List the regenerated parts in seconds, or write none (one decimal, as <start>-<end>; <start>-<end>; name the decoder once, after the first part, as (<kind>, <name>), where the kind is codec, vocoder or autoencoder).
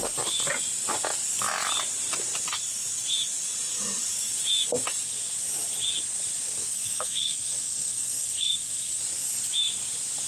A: 6.7-9.0 (codec, SNAC)